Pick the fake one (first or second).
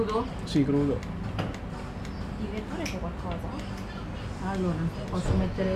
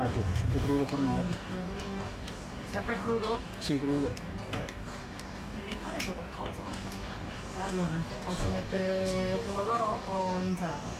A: second